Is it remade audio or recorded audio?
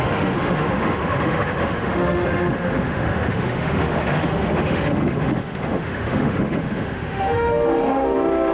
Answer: remade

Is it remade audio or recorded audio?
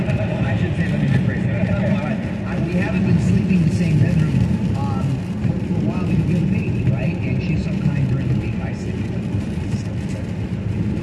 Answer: recorded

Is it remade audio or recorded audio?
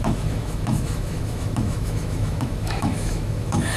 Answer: remade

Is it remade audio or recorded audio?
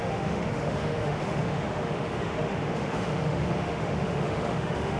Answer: remade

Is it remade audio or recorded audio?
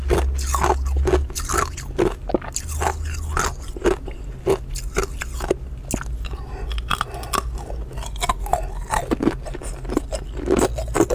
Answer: recorded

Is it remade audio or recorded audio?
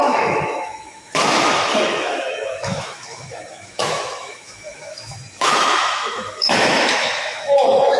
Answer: remade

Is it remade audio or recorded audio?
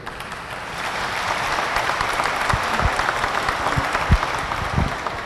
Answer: recorded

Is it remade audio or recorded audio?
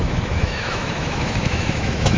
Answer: remade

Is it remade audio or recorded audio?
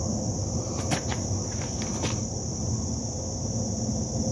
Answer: recorded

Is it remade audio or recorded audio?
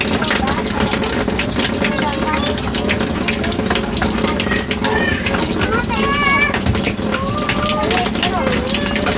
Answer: recorded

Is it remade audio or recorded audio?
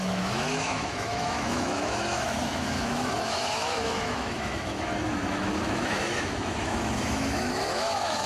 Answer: remade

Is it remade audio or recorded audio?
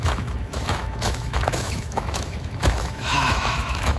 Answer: remade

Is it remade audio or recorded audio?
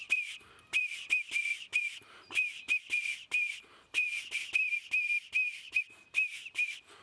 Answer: recorded